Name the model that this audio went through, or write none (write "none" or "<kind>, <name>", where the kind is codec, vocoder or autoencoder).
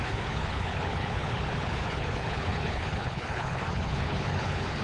codec, HILCodec